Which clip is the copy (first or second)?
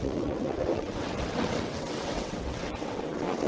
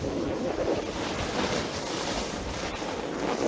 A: first